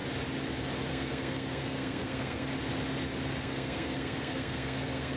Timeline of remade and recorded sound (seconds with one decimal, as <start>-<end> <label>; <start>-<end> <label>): 0.0-0.9 recorded; 0.9-2.5 remade; 2.5-3.4 recorded; 3.4-5.2 remade